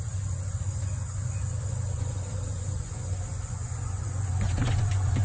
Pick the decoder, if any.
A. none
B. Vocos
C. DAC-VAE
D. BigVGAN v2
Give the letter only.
B